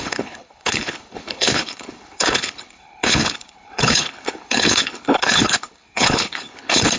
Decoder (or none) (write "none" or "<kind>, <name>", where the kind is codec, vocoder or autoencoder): codec, HILCodec